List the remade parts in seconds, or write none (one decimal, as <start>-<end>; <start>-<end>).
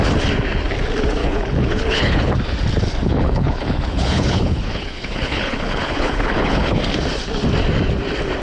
1.2-2.3; 3.0-6.8